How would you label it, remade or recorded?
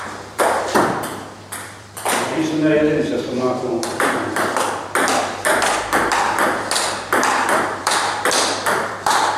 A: remade